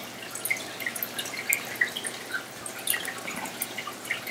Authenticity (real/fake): real